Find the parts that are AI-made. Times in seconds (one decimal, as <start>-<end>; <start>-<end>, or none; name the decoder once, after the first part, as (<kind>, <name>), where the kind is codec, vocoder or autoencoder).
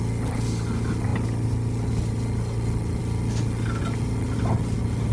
none